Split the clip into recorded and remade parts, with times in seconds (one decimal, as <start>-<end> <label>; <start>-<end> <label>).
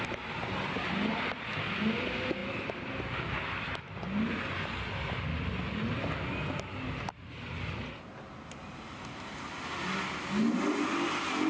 0.0-11.5 recorded